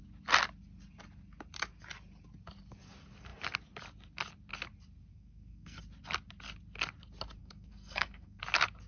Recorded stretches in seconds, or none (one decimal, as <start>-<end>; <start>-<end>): 0.0-5.1; 5.8-7.4; 8.4-8.9